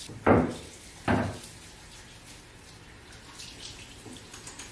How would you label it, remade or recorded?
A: recorded